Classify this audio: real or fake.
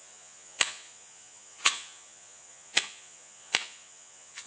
fake